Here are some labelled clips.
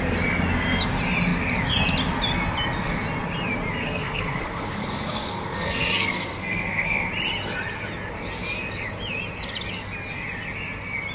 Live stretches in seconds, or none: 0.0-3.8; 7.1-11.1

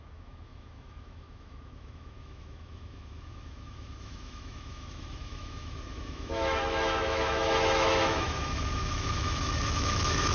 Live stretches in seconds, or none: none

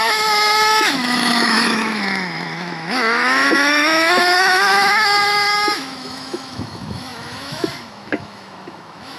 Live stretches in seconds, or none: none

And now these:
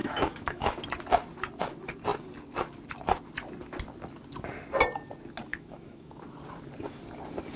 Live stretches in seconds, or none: 0.8-5.5; 6.2-7.6